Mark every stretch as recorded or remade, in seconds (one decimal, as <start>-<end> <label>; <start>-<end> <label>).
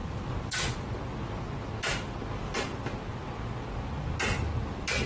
0.0-5.1 recorded